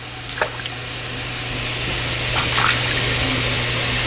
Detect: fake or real real